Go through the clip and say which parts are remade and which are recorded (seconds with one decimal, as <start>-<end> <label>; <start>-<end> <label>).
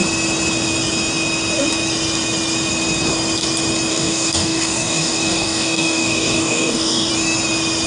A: 0.0-3.9 recorded; 3.9-7.1 remade; 7.1-7.9 recorded